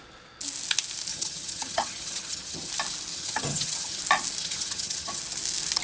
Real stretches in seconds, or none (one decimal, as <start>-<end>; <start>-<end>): 0.0-1.1; 2.7-3.1; 4.0-4.4; 5.2-5.8